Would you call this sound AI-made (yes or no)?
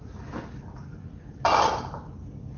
no